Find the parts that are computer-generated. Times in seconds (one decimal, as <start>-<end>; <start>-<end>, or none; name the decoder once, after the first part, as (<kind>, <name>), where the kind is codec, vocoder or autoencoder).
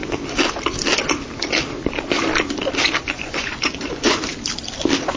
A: 3.1-4.3 (vocoder, Vocos)